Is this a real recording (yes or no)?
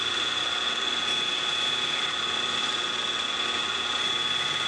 yes